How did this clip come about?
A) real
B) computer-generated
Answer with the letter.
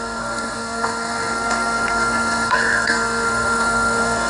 B